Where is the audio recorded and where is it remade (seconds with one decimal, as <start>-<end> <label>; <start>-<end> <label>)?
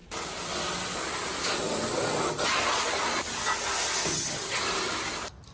0.0-4.1 recorded; 4.1-4.6 remade; 4.6-5.5 recorded